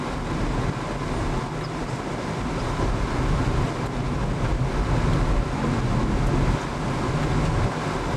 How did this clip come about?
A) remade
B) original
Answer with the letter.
B